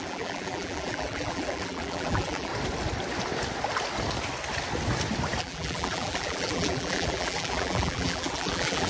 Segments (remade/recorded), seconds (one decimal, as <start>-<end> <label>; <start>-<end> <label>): 0.0-2.5 remade; 2.5-5.4 recorded; 5.4-8.9 remade